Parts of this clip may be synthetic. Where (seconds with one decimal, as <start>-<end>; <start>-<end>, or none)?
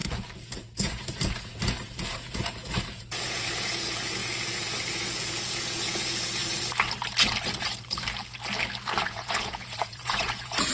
0.0-6.4; 9.0-10.7